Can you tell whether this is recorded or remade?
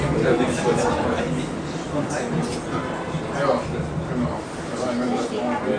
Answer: recorded